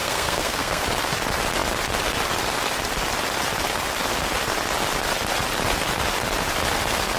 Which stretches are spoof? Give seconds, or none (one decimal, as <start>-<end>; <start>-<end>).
0.0-0.8